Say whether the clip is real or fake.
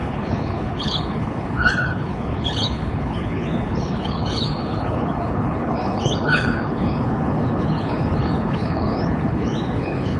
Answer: fake